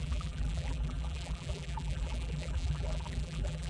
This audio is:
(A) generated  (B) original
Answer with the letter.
A